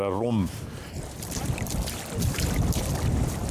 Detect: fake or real fake